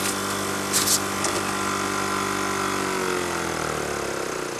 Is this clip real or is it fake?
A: real